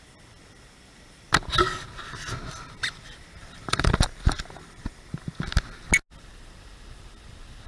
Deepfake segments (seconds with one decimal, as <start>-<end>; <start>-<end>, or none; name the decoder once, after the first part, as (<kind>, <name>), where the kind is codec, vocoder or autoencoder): 3.4-5.0 (vocoder, BigVGAN v2)